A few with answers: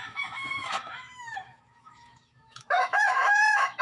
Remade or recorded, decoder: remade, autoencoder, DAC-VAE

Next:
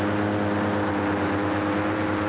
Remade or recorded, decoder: recorded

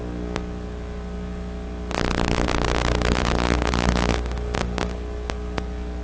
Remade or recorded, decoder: recorded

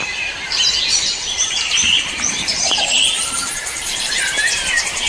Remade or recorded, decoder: remade, vocoder, BigVGAN v2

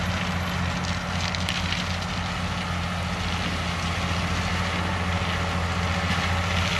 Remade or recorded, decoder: recorded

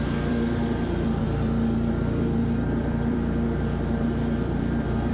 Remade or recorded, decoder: remade, vocoder, BigVGAN v2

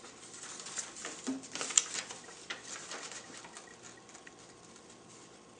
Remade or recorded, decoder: recorded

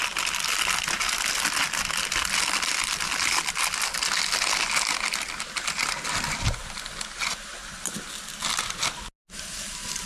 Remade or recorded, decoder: recorded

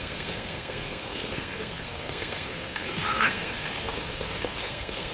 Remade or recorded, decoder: remade, codec, SNAC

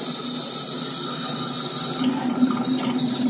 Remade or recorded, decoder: recorded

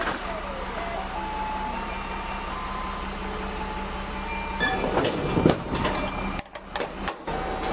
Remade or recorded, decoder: recorded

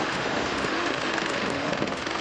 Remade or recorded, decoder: remade, autoencoder, DAC-VAE